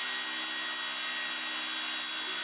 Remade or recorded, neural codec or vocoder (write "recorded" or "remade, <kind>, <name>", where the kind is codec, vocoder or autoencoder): recorded